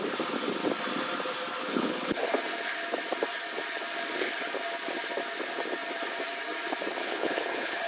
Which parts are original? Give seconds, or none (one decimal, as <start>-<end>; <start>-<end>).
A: 0.0-1.6; 2.3-7.0